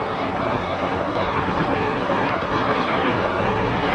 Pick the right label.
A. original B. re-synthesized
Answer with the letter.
B